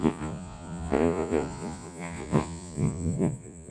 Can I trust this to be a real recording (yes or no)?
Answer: no